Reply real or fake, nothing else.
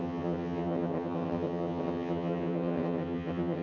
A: fake